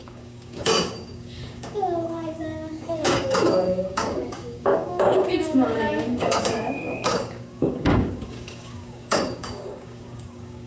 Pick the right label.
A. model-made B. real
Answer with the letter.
A